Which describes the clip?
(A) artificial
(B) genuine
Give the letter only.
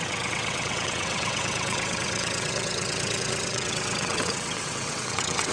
A